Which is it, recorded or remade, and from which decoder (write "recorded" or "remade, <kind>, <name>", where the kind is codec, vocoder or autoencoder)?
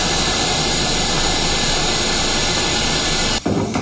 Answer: recorded